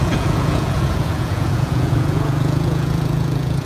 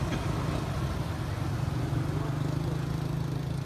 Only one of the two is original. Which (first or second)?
second